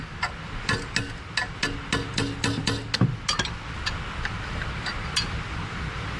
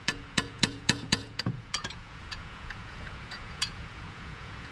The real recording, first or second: first